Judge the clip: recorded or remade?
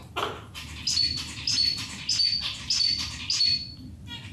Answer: recorded